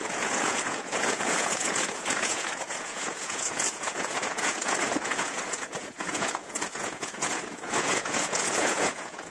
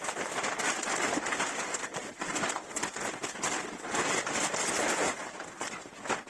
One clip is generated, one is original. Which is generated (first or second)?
first